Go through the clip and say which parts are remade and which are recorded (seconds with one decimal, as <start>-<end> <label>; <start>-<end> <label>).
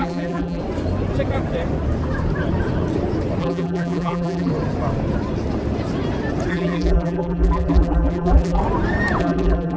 0.0-0.6 remade; 0.6-3.4 recorded; 3.4-4.5 remade; 4.5-6.5 recorded; 6.5-8.6 remade; 8.6-9.2 recorded; 9.2-9.8 remade